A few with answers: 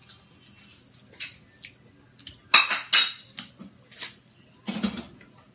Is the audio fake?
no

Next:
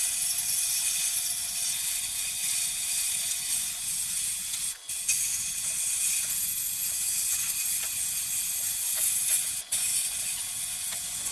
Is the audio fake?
yes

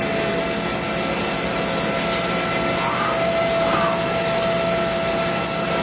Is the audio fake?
no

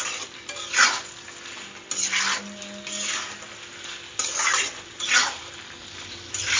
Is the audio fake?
no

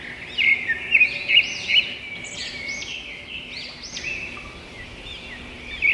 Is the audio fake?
no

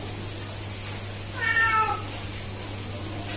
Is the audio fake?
no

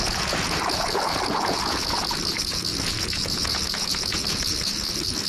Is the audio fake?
yes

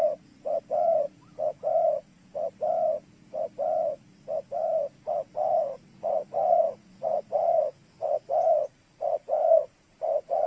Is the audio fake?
yes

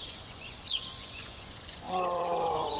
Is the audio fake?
yes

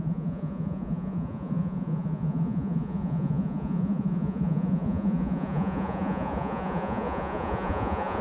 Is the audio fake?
yes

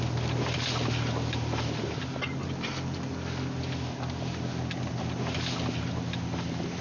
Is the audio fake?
no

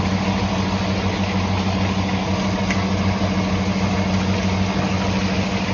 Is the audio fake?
no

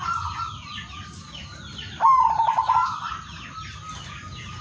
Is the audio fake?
no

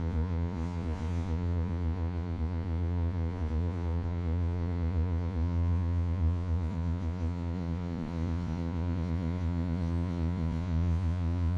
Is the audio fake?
yes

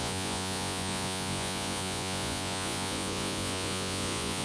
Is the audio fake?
yes